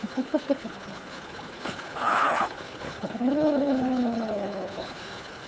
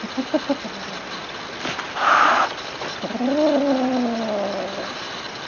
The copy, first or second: first